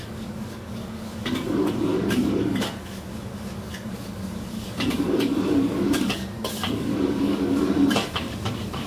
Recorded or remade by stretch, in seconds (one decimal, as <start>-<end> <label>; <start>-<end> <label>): 0.0-8.9 remade